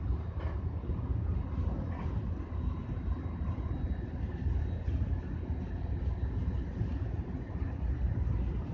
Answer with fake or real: real